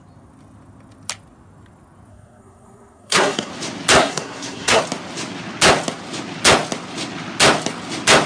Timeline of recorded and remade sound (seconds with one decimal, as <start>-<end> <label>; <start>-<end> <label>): 0.0-2.1 recorded; 2.1-3.5 remade; 3.5-4.0 recorded; 4.0-4.8 remade; 4.8-8.3 recorded